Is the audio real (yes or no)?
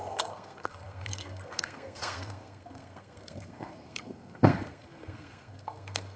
no